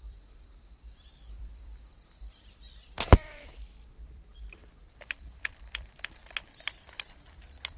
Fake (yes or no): yes